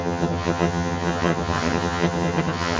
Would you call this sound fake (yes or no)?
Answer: yes